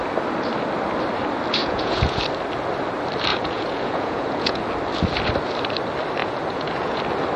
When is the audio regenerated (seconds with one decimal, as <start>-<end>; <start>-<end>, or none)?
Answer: 1.6-2.2; 3.3-4.6; 6.2-7.0